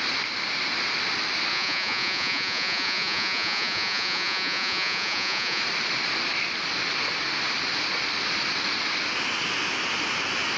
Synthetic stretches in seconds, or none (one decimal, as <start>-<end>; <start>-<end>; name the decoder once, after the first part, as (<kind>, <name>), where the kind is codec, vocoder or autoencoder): 1.5-5.6 (vocoder, Vocos)